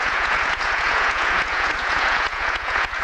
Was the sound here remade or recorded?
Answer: remade